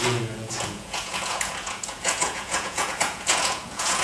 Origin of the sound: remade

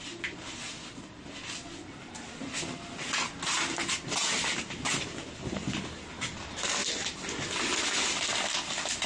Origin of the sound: recorded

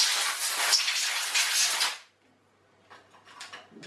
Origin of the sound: recorded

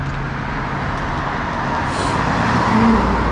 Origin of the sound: recorded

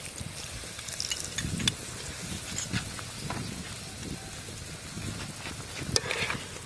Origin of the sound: recorded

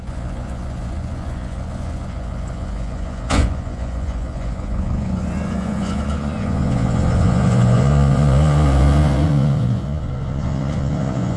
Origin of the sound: remade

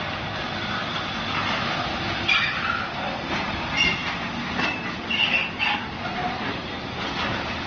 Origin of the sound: recorded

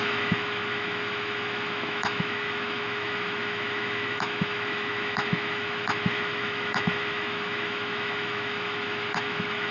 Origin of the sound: remade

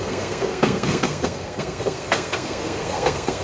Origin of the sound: remade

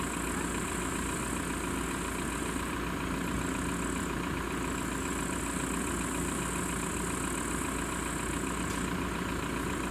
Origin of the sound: recorded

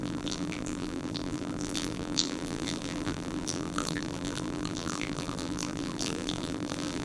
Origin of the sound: remade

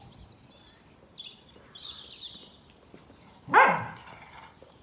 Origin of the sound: recorded